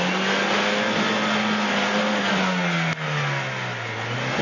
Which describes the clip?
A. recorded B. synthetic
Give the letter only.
A